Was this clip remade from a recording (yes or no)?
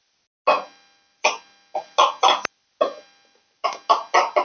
no